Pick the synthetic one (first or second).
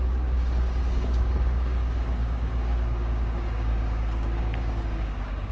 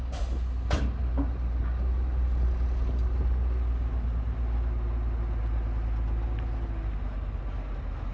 first